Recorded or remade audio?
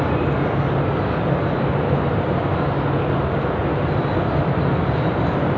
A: recorded